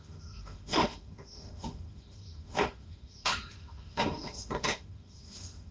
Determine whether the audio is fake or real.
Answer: fake